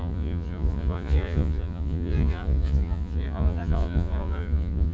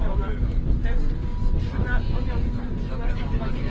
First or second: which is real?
second